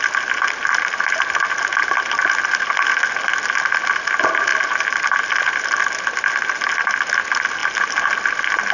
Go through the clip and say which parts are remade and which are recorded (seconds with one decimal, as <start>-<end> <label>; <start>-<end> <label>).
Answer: 0.0-8.7 recorded